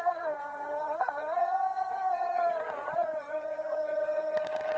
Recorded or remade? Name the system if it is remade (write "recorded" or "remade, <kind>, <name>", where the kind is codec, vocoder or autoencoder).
remade, vocoder, HiFi-GAN